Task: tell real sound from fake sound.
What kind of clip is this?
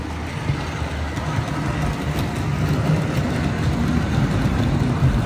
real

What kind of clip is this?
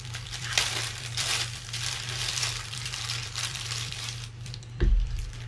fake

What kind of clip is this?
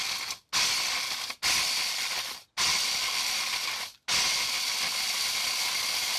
real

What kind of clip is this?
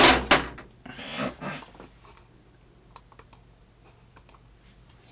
real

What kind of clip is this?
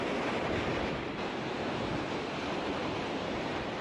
fake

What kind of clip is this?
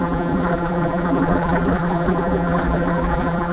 fake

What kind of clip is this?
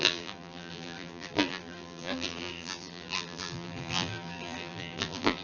fake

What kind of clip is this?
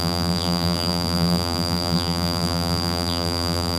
fake